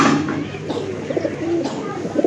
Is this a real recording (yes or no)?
yes